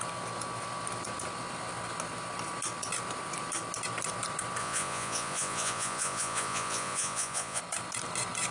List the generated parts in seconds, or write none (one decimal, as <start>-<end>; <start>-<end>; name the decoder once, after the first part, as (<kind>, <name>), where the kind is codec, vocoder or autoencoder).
4.6-7.6 (vocoder, Vocos)